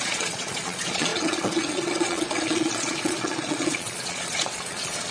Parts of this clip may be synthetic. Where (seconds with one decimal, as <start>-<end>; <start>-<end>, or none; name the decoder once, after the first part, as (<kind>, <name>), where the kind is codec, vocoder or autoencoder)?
0.0-5.1 (vocoder, Vocos)